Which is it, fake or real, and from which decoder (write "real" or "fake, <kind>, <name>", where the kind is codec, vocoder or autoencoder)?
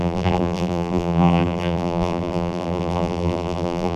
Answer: fake, vocoder, BigVGAN v2